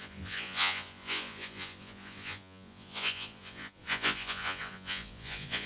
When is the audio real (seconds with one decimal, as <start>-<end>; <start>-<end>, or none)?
none